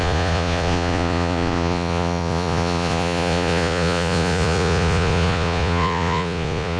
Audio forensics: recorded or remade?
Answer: remade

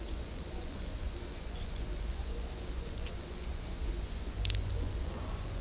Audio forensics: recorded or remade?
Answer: remade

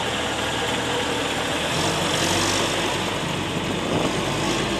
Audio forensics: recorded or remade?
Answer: recorded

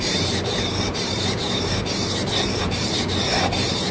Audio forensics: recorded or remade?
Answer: remade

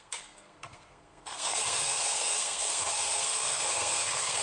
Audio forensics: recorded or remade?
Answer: remade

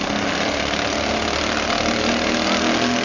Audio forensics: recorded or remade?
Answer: recorded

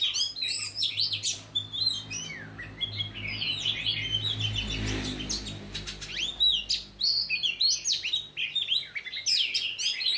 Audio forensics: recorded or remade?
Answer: recorded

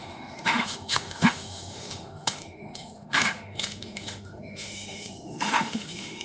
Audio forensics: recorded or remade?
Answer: remade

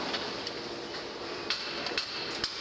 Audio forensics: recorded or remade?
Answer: recorded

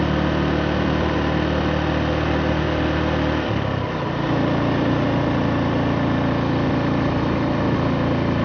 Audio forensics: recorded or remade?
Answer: recorded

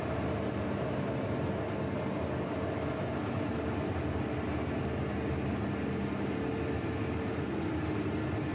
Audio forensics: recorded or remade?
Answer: recorded